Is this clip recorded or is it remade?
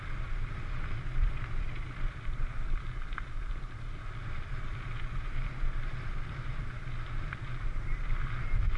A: remade